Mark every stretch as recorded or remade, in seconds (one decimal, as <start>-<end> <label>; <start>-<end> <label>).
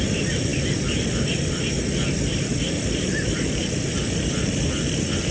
0.0-5.3 remade